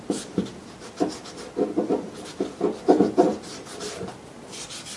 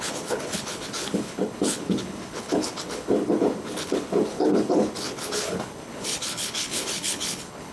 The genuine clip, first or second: first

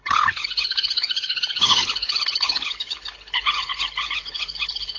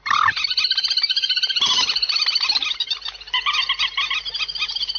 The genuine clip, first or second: second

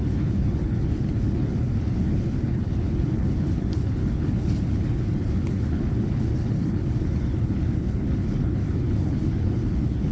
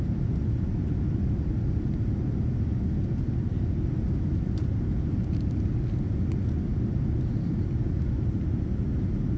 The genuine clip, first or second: second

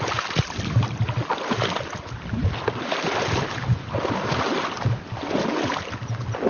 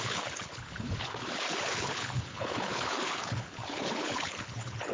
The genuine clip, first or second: first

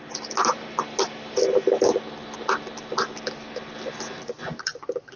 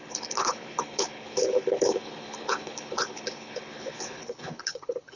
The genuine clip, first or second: first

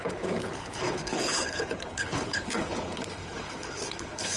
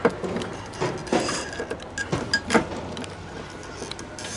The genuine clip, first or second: second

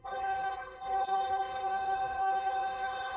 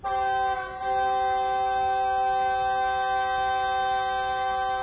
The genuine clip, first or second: second